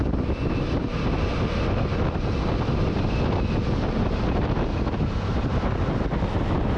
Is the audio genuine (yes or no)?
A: yes